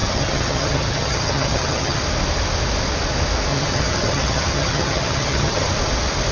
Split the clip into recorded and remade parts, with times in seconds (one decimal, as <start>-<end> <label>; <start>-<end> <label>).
0.0-2.0 remade; 2.0-3.5 recorded; 3.5-5.7 remade; 5.7-6.3 recorded